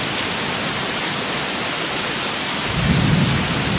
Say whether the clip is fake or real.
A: real